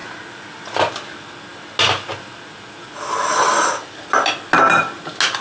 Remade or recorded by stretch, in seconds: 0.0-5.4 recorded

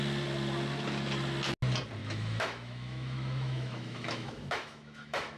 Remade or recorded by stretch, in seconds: 0.0-2.0 recorded; 2.0-5.4 remade